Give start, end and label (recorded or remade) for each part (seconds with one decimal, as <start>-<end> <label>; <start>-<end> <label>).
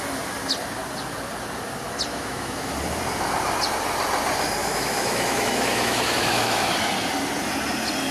0.0-2.1 recorded; 2.1-2.7 remade; 2.7-4.6 recorded; 4.6-6.7 remade; 6.7-8.1 recorded